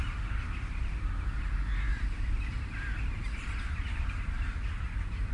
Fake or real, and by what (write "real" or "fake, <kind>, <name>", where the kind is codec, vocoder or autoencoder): real